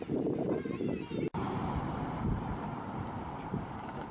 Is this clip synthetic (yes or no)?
yes